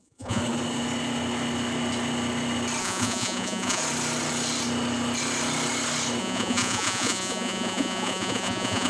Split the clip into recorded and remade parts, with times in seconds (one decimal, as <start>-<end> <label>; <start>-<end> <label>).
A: 0.0-0.4 remade; 0.4-2.8 recorded; 2.8-3.8 remade; 3.8-6.2 recorded; 6.2-8.9 remade